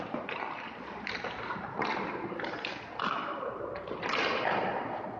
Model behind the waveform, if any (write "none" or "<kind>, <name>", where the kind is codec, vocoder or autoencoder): none